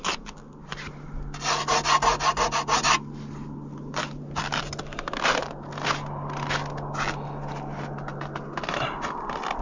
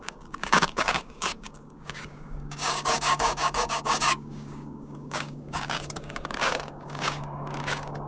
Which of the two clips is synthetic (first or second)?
second